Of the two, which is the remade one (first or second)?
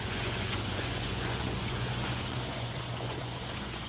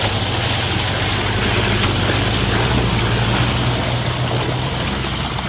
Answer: first